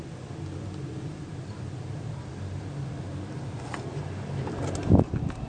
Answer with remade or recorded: recorded